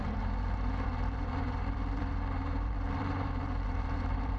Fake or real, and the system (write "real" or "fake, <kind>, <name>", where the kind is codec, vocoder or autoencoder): fake, vocoder, BigVGAN v2